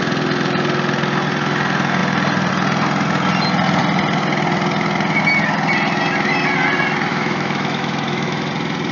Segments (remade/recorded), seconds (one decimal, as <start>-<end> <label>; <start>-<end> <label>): 0.0-7.1 recorded; 7.1-8.5 remade; 8.5-8.9 recorded